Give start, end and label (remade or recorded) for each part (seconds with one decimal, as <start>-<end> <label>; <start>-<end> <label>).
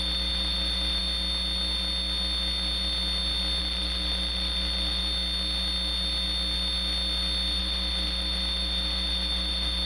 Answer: 0.0-1.0 remade; 1.0-3.6 recorded; 3.6-5.0 remade; 5.0-7.6 recorded; 7.6-9.9 remade